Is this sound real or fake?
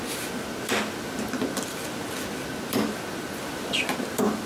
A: real